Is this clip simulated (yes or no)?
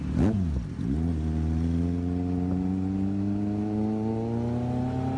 no